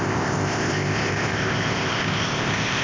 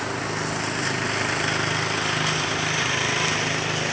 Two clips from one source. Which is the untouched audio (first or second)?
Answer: second